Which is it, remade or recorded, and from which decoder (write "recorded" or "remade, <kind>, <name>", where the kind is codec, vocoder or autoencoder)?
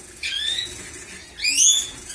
remade, vocoder, Vocos